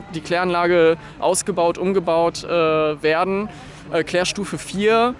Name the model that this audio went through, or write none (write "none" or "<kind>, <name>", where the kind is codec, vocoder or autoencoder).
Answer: none